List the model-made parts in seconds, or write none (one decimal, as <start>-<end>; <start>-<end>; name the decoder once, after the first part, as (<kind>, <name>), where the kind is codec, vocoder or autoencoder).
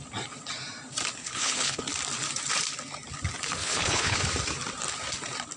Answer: 1.2-1.8 (codec, HILCodec); 3.6-4.2